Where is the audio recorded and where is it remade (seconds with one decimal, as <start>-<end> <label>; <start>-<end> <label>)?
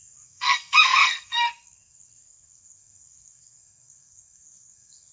0.0-5.1 remade